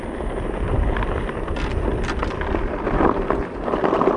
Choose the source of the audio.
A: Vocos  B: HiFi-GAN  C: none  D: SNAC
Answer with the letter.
C